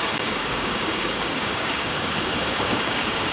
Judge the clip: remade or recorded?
remade